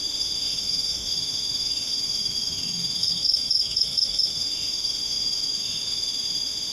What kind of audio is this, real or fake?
fake